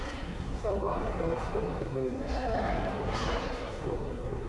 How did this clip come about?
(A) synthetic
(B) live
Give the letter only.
A